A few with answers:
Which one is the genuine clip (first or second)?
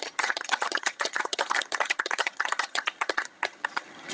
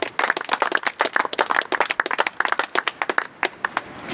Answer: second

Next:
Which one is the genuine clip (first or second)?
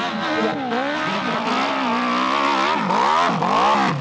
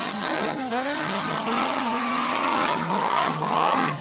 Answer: first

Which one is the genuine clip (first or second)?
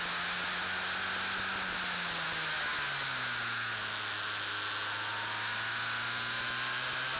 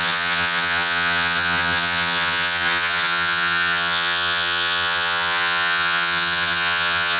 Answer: first